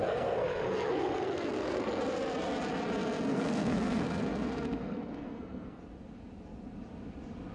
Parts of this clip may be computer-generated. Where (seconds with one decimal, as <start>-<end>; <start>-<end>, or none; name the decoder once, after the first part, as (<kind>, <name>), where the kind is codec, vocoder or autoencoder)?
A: 0.0-2.0 (codec, SNAC); 3.3-5.8